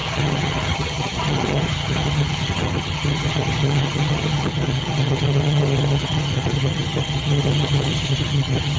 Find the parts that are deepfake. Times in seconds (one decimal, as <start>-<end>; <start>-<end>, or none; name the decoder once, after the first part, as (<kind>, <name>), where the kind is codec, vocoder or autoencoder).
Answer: 0.0-8.8 (vocoder, HiFi-GAN)